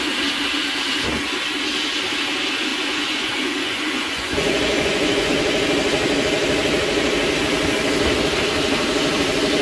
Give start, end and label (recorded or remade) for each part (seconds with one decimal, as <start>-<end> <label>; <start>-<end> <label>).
0.0-2.7 recorded; 2.7-5.3 remade; 5.3-9.6 recorded